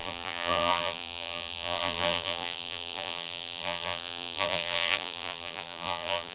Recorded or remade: remade